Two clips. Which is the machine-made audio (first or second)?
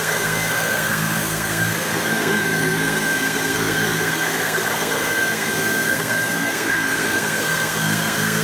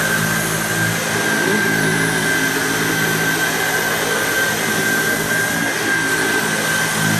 first